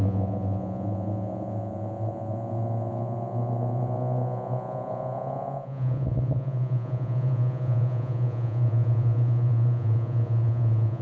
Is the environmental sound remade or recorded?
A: remade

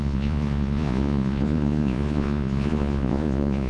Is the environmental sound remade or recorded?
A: remade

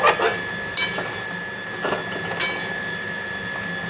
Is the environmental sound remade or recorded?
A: recorded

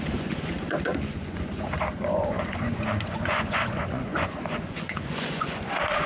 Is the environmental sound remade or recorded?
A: remade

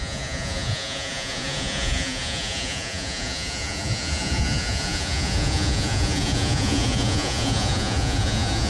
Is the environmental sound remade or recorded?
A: remade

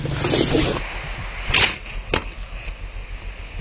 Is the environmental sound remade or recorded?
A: recorded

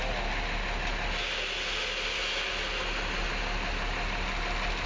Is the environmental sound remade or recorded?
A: recorded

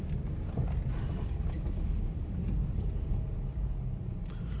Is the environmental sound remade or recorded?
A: recorded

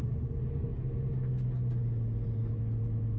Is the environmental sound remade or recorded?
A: recorded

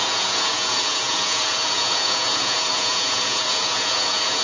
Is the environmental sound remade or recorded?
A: remade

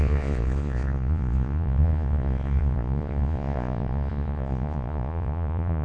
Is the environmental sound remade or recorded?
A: remade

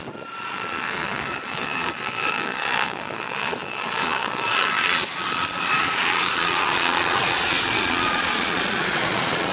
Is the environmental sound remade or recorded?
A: remade